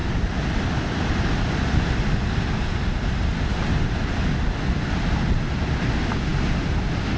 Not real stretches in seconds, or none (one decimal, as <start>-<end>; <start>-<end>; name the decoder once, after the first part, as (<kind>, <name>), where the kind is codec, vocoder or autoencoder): none